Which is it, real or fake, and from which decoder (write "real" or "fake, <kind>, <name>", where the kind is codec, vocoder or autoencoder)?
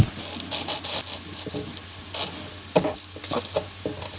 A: real